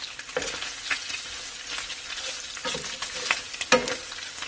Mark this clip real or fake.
real